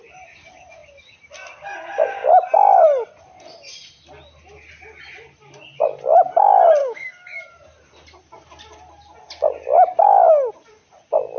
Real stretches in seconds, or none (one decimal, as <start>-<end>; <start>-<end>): 0.0-6.8; 7.4-11.4

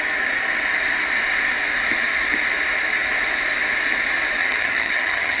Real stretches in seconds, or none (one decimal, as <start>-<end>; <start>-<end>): 0.0-4.4

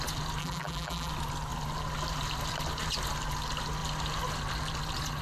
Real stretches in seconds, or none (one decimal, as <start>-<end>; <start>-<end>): 0.0-0.4; 1.1-5.2

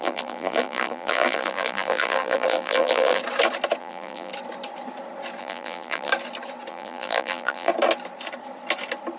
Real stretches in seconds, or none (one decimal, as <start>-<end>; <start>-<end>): 3.2-3.8; 4.3-5.4; 6.1-6.7; 7.7-9.2